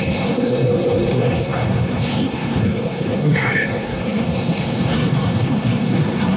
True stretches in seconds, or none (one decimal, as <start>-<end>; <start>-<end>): none